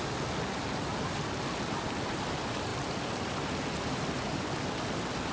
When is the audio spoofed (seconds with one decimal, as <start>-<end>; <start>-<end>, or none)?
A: 0.9-1.5; 2.7-3.5